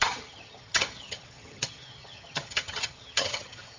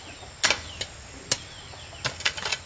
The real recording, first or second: second